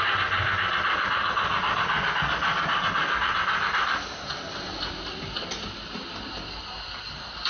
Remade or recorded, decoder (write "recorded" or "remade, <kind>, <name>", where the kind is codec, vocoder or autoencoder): recorded